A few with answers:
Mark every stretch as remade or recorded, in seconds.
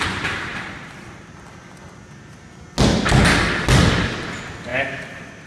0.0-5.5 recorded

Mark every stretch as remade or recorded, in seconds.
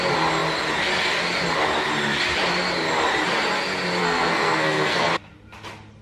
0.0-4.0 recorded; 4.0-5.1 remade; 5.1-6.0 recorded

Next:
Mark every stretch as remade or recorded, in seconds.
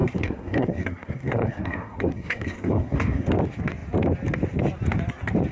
0.0-3.3 remade; 3.3-5.5 recorded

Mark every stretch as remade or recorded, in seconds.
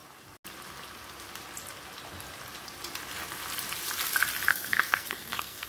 0.0-4.5 recorded; 4.5-5.7 remade